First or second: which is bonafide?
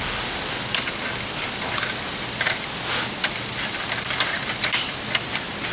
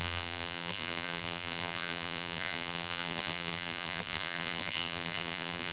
first